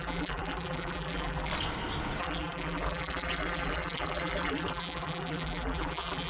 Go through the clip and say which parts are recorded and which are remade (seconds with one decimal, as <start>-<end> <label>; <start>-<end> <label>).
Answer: 0.0-1.5 remade; 1.5-2.2 recorded; 2.2-6.3 remade